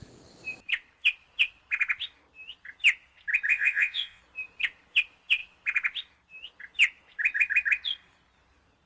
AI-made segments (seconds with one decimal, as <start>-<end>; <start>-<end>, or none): 3.5-4.2